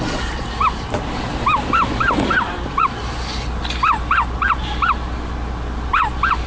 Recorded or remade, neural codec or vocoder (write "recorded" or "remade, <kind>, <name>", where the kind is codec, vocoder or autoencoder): recorded